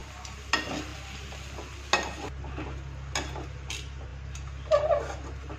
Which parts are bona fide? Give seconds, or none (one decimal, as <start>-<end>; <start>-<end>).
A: 0.5-5.6